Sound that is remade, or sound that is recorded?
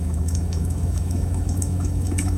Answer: remade